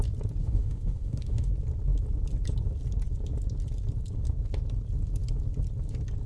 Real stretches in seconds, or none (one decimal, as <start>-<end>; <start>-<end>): 0.0-0.4; 1.5-6.3